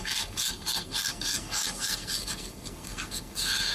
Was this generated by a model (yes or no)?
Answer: yes